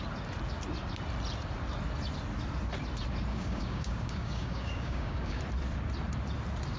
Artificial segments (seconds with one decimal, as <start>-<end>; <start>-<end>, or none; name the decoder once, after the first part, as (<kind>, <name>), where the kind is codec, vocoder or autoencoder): 3.3-5.4 (codec, DAC)